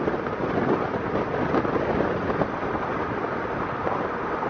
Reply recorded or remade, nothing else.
recorded